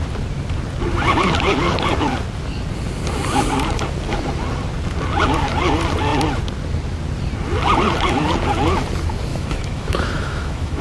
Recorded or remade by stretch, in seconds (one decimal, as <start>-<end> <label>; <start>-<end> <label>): 0.0-9.3 recorded; 9.3-10.8 remade